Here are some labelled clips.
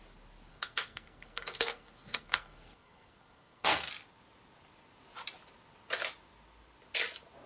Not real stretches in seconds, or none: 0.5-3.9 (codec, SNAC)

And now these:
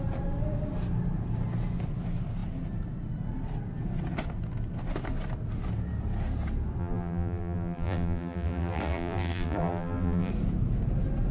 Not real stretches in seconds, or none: 6.8-10.3 (vocoder, BigVGAN v2)

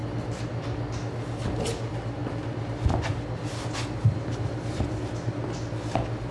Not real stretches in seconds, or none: none

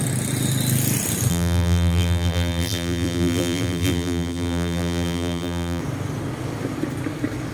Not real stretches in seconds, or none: 1.3-5.8 (vocoder, BigVGAN v2)

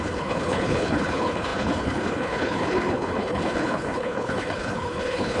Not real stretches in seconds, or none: 0.0-5.4 (codec, HILCodec)

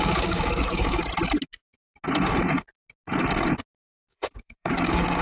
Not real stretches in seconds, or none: 0.0-1.0 (codec, DAC); 4.1-5.2

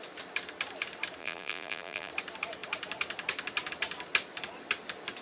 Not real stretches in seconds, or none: 1.2-2.1 (vocoder, BigVGAN v2)